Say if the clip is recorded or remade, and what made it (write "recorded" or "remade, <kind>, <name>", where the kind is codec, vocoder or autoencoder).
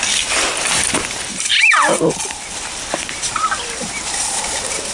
recorded